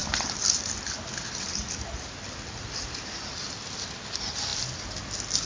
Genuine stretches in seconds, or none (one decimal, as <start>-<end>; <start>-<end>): 0.0-5.5